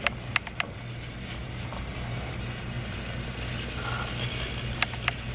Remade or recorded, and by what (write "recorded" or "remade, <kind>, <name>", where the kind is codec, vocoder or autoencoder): recorded